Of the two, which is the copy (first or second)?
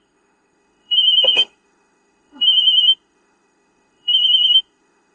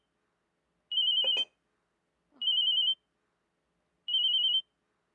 first